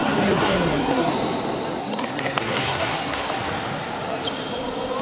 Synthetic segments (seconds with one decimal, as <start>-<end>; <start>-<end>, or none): 0.0-1.1; 1.8-3.3